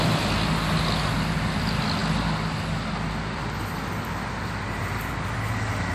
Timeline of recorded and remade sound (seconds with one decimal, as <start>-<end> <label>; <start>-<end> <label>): 0.0-5.9 recorded